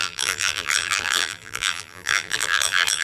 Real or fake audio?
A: fake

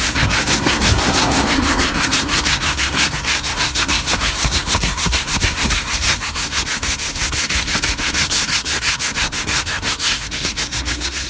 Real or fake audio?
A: fake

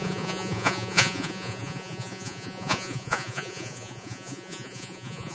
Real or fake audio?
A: fake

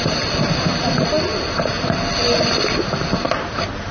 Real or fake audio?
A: real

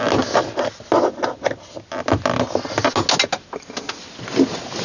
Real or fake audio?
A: real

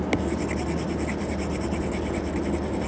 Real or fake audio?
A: real